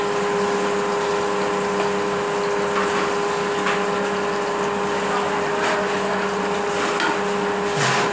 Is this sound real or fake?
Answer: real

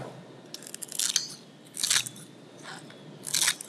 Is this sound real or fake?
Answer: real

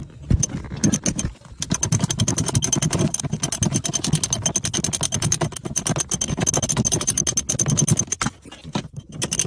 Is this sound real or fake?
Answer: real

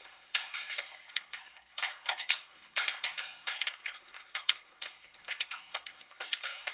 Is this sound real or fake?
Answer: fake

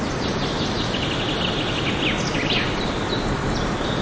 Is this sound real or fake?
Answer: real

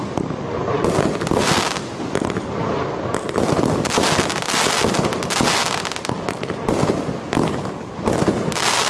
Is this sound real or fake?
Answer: real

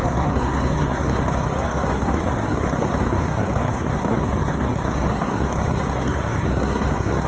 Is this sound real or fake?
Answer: fake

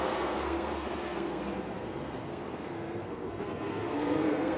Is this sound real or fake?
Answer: fake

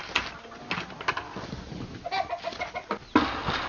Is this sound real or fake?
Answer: real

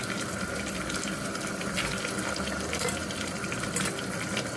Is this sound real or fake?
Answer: real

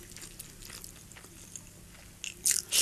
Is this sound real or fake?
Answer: real